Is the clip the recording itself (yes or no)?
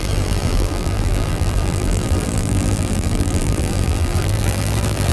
no